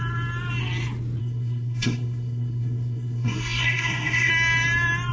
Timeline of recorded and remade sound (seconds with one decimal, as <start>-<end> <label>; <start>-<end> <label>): 0.0-1.2 recorded; 1.2-4.3 remade; 4.3-5.1 recorded